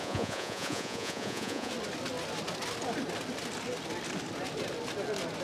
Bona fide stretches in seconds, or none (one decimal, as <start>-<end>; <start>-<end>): 1.7-5.4